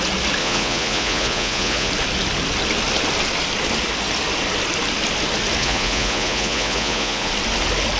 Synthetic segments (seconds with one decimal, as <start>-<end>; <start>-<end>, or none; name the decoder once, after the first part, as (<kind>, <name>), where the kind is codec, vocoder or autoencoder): 0.4-1.9 (vocoder, Vocos); 5.6-7.3